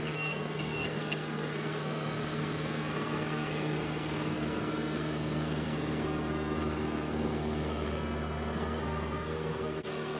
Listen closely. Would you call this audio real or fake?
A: fake